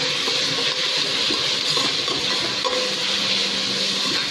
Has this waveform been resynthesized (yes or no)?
no